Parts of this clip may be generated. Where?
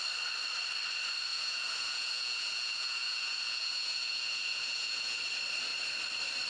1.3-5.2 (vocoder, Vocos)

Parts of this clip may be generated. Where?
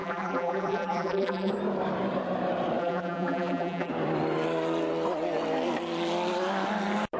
0.0-1.5 (vocoder, BigVGAN v2); 2.8-3.9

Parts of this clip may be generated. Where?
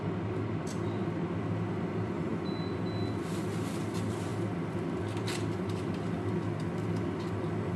none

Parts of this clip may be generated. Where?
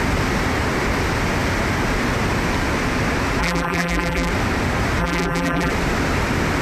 3.4-4.3 (vocoder, BigVGAN v2); 5.0-5.7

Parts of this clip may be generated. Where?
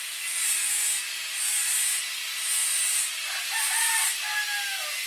none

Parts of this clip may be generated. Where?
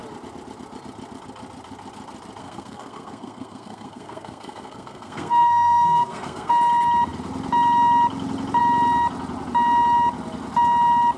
2.4-6.5 (codec, SNAC)